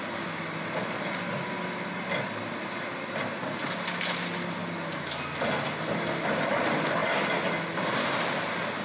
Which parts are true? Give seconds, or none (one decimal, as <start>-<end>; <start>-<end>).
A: 0.0-8.8